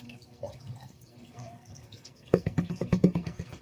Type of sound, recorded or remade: remade